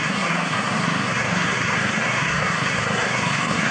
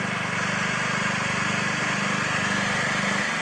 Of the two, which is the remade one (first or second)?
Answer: first